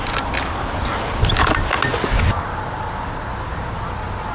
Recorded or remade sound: recorded